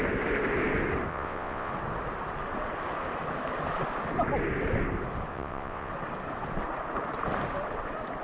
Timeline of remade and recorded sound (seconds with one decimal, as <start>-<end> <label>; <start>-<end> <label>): 0.0-1.1 recorded; 1.1-1.7 remade; 1.7-5.3 recorded; 5.3-5.9 remade; 5.9-8.2 recorded